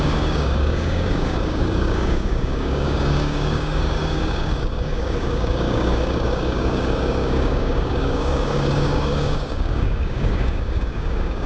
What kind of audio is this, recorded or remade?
remade